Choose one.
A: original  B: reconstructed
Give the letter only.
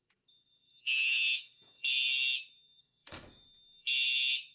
B